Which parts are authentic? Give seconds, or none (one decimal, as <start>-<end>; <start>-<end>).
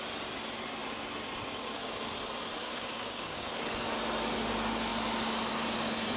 0.0-2.6; 3.5-6.2